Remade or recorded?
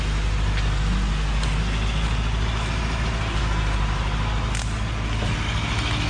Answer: recorded